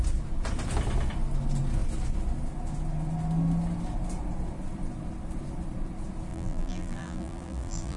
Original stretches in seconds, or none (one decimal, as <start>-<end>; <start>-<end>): 0.0-6.3